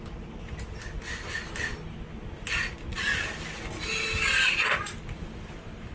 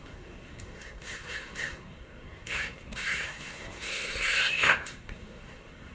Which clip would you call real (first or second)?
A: first